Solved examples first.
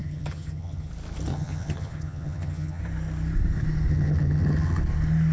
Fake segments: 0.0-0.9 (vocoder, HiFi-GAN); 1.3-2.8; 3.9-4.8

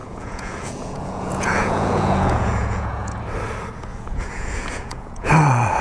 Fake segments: 0.0-3.2 (vocoder, Vocos); 3.9-5.3